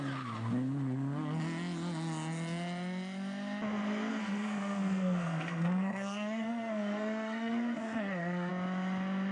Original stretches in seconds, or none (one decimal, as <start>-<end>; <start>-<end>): 0.0-4.1; 8.5-9.3